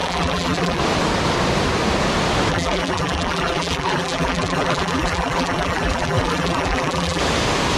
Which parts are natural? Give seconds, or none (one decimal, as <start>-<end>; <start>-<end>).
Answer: 0.8-2.5; 7.2-7.8